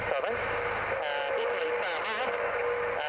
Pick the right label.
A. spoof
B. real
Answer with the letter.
B